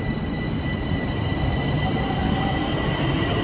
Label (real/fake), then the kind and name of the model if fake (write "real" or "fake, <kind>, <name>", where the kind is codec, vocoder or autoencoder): real